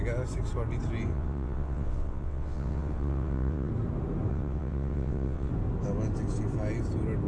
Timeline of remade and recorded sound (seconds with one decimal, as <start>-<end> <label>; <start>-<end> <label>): 0.0-1.1 recorded; 1.1-3.7 remade; 3.7-4.3 recorded; 4.3-5.5 remade; 5.5-7.3 recorded